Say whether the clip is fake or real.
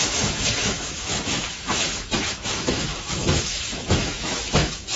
fake